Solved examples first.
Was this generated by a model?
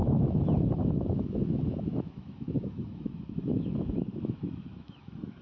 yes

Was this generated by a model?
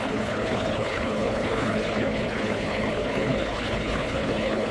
yes